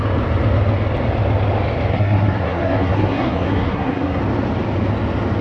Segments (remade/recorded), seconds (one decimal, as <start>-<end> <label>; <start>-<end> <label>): 0.0-1.9 recorded; 1.9-4.2 remade; 4.2-5.4 recorded